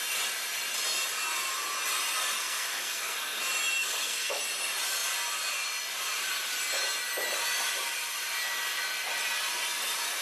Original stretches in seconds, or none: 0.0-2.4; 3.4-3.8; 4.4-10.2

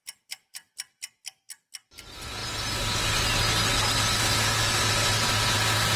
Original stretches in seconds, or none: 0.0-6.0

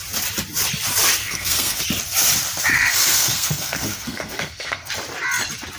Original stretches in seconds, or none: 0.0-1.2; 1.8-2.7; 4.9-5.8

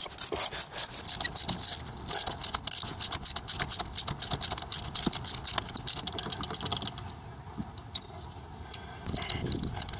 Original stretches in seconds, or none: 0.0-10.0

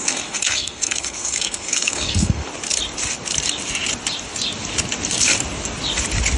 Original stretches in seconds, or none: 2.5-6.4

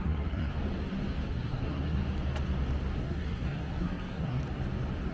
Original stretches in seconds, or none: 0.5-1.3; 2.0-3.0; 4.4-5.1

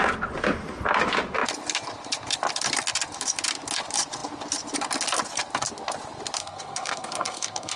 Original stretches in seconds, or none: 0.0-6.4

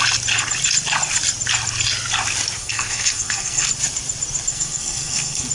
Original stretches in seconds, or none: 0.0-2.6; 3.7-4.5